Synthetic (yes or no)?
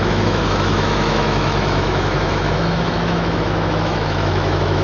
yes